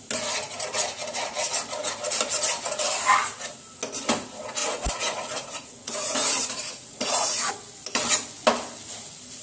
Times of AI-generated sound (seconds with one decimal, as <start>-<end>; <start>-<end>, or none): 4.6-7.5